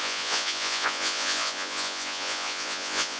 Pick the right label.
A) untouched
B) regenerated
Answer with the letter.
B